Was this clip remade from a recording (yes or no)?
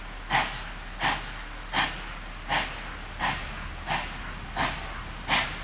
no